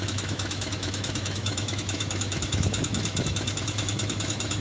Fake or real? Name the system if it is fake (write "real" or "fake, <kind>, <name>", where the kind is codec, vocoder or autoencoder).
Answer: fake, autoencoder, DAC-VAE